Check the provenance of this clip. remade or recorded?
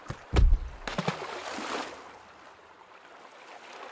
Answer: recorded